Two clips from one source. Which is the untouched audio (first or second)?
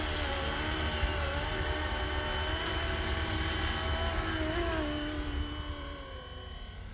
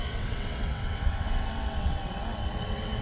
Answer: first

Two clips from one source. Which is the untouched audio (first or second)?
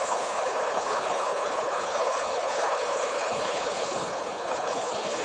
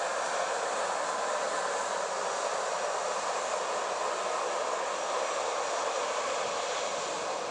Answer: second